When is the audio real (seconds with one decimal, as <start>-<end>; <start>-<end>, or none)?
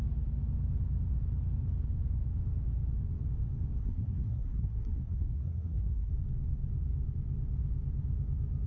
0.0-3.8; 6.1-8.7